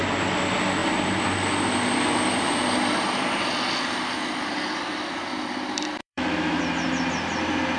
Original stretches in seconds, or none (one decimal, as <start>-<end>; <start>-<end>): 0.0-6.0; 6.6-7.8